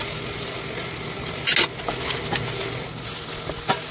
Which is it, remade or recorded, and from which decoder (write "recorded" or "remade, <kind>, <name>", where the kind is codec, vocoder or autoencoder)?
recorded